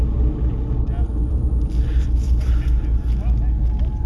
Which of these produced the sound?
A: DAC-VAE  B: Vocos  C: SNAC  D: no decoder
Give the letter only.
D